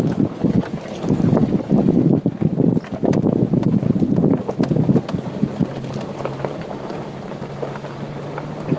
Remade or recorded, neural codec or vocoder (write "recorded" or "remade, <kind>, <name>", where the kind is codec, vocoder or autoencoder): recorded